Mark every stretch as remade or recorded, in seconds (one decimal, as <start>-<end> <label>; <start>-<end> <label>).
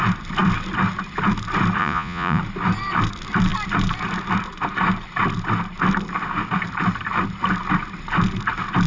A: 0.0-1.8 recorded; 1.8-2.4 remade; 2.4-8.9 recorded